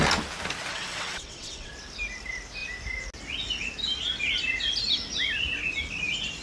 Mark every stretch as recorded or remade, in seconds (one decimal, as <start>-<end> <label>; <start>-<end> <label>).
0.0-0.7 recorded; 0.7-1.7 remade; 1.7-6.4 recorded